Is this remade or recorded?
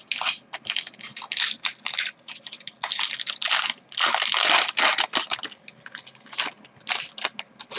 recorded